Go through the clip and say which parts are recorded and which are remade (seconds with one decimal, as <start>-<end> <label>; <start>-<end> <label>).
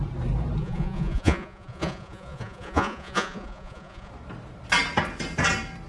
0.0-0.6 recorded; 0.6-4.1 remade; 4.1-5.9 recorded